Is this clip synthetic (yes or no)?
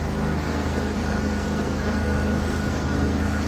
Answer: yes